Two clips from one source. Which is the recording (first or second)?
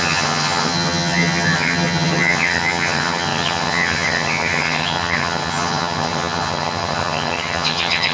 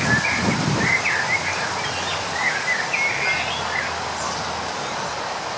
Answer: second